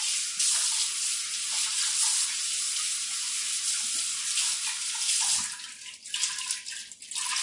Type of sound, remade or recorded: recorded